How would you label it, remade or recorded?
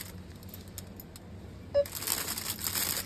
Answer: recorded